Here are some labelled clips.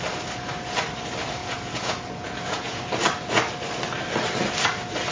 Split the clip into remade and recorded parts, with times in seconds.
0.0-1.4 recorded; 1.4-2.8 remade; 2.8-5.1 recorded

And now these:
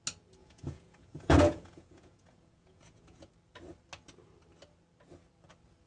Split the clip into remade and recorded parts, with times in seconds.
0.0-0.4 recorded; 0.4-3.3 remade; 3.3-5.9 recorded